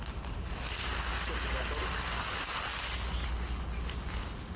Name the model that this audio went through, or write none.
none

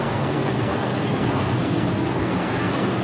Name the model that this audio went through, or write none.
codec, SNAC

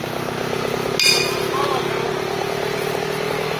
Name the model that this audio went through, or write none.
none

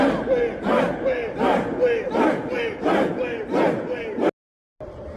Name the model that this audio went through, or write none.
none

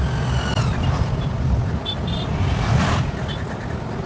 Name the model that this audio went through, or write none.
none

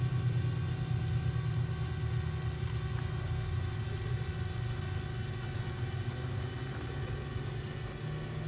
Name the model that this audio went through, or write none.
none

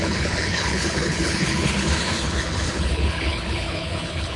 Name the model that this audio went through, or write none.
codec, HILCodec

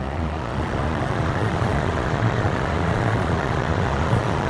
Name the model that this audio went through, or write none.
vocoder, Vocos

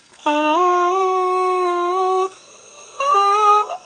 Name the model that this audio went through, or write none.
codec, SNAC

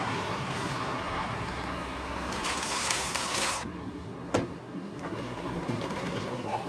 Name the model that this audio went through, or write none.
codec, SNAC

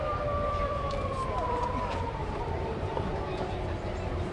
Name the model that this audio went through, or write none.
vocoder, BigVGAN v2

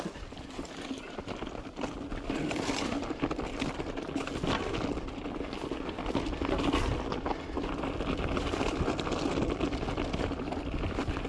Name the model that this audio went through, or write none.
none